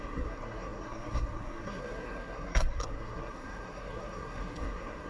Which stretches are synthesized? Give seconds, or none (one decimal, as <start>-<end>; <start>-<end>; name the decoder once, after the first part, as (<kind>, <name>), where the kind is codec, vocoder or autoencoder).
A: 0.0-5.1 (codec, SNAC)